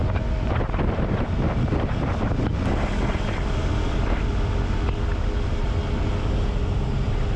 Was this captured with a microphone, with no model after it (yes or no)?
yes